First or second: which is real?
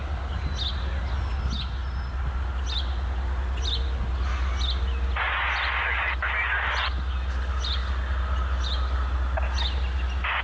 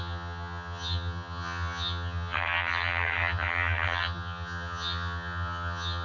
first